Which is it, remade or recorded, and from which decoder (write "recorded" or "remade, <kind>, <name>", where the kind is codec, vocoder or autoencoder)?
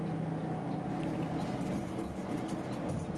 recorded